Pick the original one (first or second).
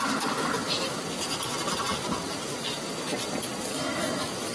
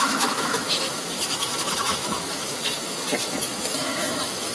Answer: first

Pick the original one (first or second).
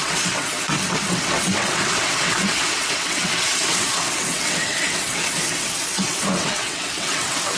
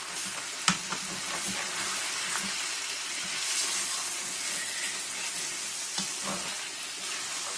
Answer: second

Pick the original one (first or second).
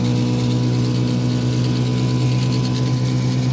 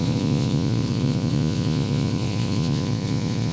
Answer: first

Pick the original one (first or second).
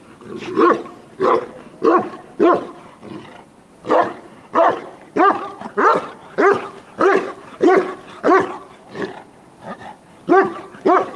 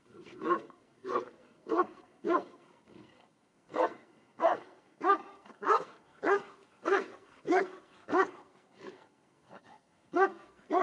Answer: first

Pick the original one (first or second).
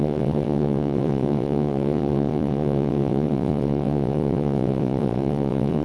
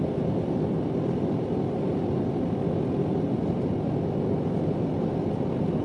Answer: second